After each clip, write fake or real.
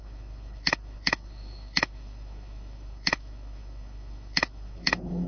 fake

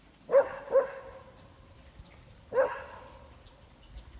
real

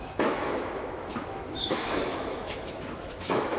fake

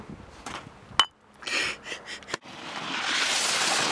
real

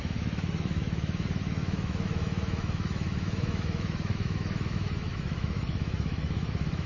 fake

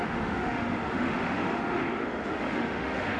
fake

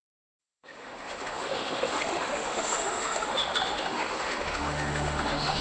fake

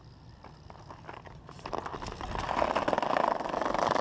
real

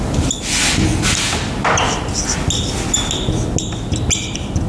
real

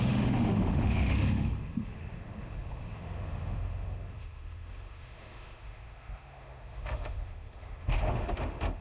fake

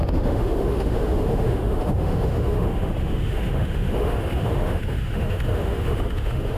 fake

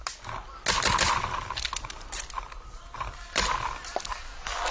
real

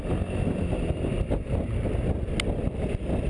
real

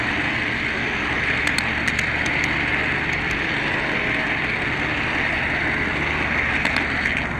real